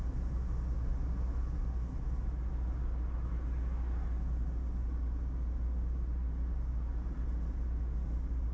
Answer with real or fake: real